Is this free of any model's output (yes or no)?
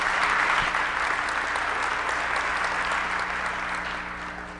yes